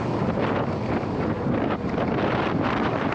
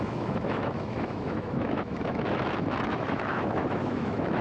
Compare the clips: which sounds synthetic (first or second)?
second